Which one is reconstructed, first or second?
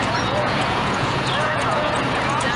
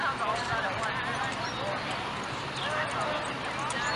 first